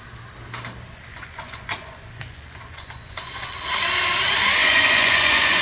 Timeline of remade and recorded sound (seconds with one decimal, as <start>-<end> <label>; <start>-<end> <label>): 0.0-1.1 recorded; 1.1-3.5 remade; 3.5-4.6 recorded; 4.6-5.6 remade